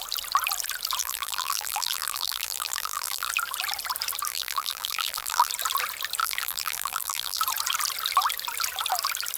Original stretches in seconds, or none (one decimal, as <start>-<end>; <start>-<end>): 0.0-1.0; 3.3-4.3; 5.5-6.2; 7.4-9.4